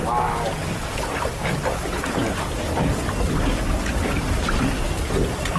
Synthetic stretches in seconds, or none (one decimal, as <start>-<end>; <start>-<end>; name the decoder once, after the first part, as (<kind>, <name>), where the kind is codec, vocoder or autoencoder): 0.6-1.4 (vocoder, BigVGAN v2); 1.9-4.7